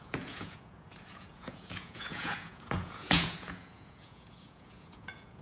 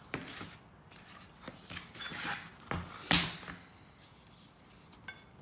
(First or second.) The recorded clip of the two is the second